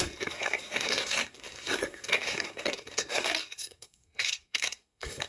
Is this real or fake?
fake